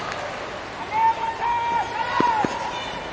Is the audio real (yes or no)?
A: yes